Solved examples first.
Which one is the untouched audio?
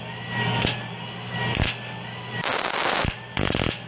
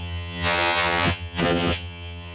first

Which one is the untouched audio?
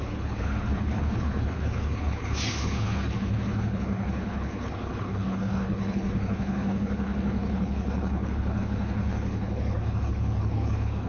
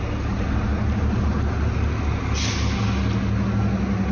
second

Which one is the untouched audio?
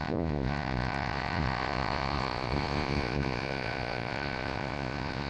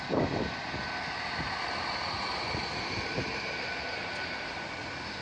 second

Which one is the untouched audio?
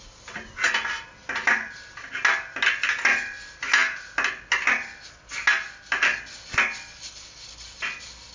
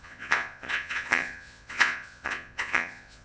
first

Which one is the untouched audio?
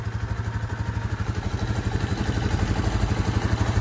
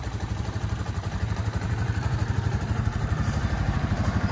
first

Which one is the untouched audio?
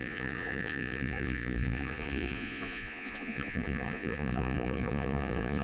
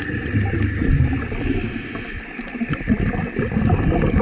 second